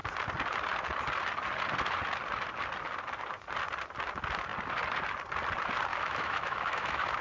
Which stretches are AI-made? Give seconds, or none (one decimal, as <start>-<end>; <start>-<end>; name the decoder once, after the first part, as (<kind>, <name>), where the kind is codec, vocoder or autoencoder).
5.9-7.2 (autoencoder, DAC-VAE)